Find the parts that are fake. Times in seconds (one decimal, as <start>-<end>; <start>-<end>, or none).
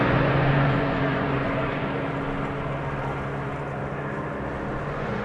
0.0-1.8; 4.8-5.2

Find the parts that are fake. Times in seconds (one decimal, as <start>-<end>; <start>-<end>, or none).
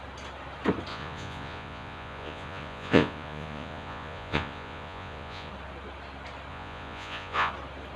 0.9-5.5; 6.5-7.5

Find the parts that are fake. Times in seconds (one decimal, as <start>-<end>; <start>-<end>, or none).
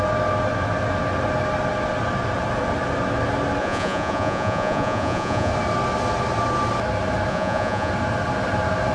3.6-5.5; 7.3-7.9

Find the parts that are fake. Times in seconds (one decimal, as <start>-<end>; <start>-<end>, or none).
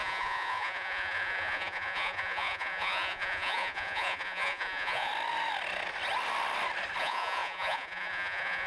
0.0-5.1; 7.0-8.7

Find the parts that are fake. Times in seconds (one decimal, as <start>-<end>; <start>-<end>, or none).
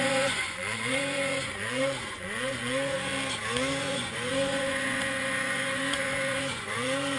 0.0-3.1; 3.8-7.2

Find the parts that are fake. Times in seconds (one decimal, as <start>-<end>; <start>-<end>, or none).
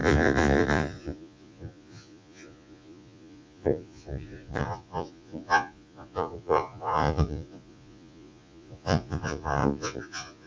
0.0-10.5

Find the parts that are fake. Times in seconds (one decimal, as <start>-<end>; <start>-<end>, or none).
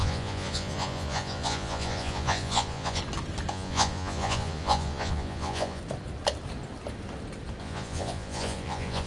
0.0-3.0; 3.5-5.8; 7.6-9.1